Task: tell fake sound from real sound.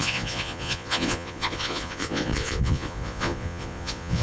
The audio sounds fake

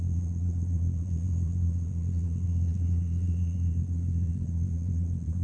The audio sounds fake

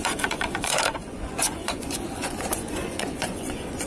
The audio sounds fake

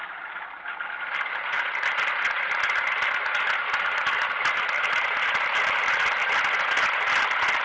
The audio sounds real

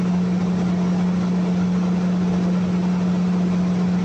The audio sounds real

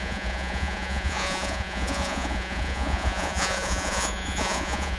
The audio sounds fake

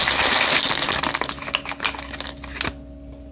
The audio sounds real